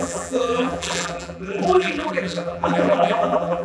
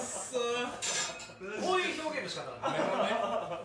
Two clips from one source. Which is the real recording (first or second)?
second